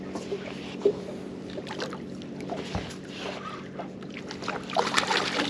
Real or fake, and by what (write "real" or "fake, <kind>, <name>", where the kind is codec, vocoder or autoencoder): real